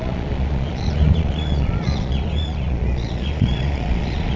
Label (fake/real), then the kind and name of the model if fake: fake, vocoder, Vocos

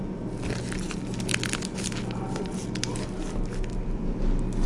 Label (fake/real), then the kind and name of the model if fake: real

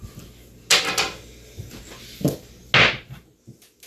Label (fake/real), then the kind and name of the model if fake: real